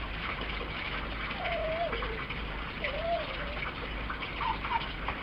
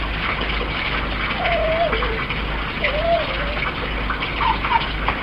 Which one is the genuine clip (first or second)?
second